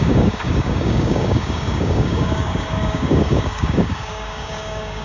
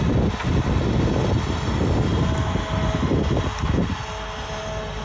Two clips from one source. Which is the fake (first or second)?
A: first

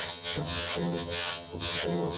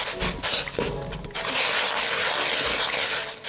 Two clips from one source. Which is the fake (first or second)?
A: first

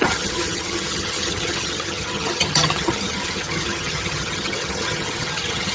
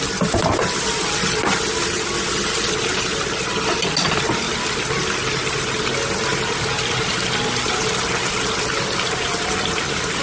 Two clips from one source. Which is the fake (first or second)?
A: first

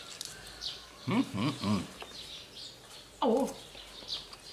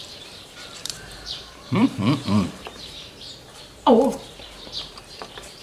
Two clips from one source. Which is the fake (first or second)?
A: second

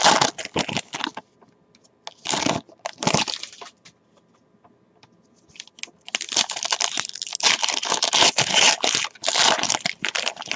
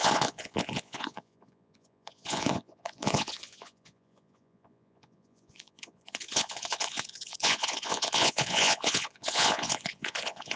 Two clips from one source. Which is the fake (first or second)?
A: second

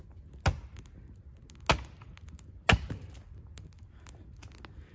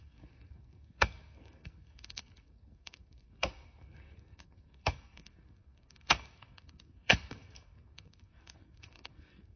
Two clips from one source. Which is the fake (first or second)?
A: second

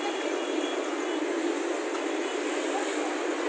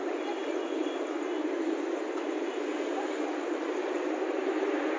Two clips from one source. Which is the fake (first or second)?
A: second